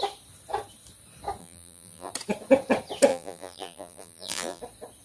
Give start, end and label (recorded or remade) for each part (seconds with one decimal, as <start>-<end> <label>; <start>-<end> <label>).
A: 0.0-1.4 recorded; 1.4-2.1 remade; 2.1-3.1 recorded; 3.1-4.6 remade; 4.6-5.0 recorded